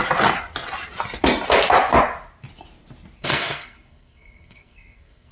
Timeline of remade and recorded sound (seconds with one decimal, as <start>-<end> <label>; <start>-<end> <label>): 0.0-3.2 recorded; 3.2-5.3 remade